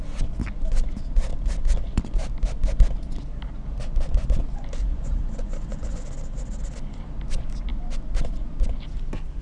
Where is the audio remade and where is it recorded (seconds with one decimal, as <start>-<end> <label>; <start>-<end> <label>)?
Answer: 0.0-4.9 recorded; 4.9-6.0 remade; 6.0-9.4 recorded